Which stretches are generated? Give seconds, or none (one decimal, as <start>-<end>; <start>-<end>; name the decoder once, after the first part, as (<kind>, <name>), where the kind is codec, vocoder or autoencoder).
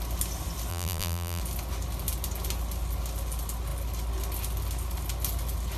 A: 0.7-1.4 (vocoder, BigVGAN v2)